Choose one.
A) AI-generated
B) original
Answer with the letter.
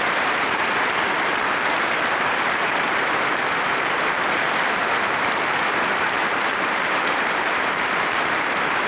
A